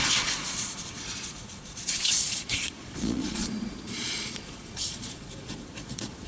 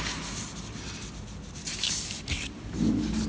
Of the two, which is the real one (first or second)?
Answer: second